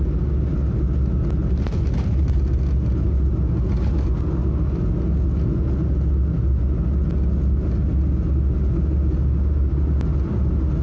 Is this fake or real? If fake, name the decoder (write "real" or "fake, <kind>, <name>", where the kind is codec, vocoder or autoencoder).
real